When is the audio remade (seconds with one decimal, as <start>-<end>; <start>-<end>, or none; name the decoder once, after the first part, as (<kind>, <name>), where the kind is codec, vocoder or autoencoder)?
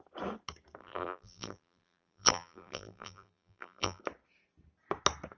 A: 0.8-4.0 (vocoder, BigVGAN v2)